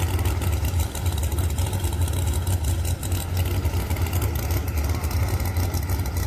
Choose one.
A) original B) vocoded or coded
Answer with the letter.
A